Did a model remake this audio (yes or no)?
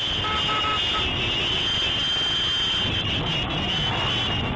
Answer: no